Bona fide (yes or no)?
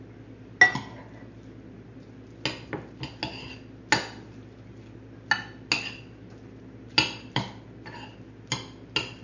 yes